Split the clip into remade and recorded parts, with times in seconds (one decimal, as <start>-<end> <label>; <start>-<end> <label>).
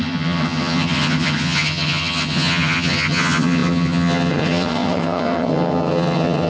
0.0-6.5 remade